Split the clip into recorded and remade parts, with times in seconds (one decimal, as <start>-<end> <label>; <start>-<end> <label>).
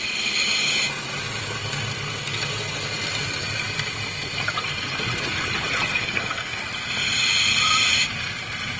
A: 0.0-6.0 recorded; 6.0-6.6 remade; 6.6-8.8 recorded